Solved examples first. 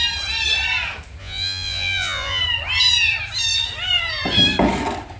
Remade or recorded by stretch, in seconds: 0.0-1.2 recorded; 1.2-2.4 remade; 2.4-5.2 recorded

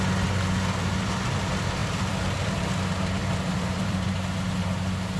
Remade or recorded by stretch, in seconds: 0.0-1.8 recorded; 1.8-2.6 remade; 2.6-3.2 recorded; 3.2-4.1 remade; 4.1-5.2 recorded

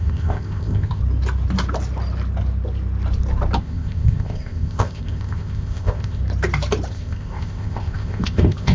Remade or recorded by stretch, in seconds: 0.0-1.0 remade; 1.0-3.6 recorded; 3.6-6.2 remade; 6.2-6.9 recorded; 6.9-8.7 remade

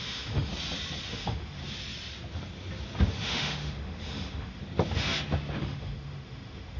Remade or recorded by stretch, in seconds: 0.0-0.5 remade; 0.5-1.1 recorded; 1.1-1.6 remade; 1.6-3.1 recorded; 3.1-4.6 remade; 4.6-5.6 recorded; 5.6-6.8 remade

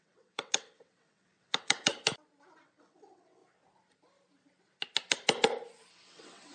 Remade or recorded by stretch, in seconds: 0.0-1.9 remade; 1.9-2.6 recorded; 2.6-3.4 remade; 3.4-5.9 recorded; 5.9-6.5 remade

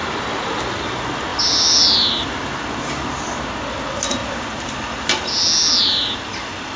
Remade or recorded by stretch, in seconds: 0.0-0.8 remade; 0.8-6.8 recorded

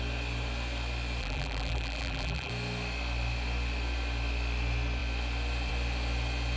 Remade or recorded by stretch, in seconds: 0.0-1.2 recorded; 1.2-2.5 remade; 2.5-6.6 recorded